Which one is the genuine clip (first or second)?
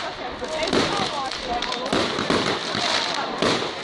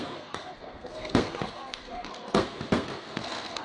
first